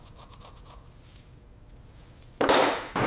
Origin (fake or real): real